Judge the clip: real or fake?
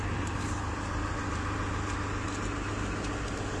real